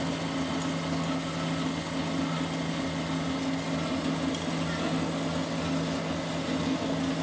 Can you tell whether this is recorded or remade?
recorded